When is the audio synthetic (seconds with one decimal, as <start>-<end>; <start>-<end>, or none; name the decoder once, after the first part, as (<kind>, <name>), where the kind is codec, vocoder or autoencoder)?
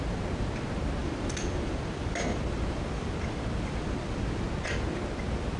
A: 1.0-4.4 (vocoder, BigVGAN v2)